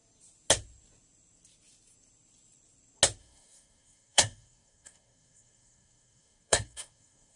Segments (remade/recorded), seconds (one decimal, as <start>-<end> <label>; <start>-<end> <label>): 0.0-3.2 recorded; 3.2-7.4 remade